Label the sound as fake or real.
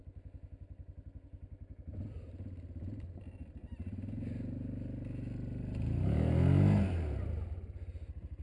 real